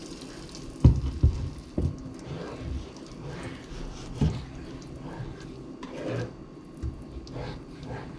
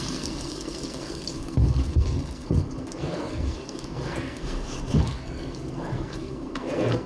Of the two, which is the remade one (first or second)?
second